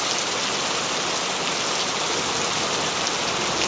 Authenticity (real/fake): real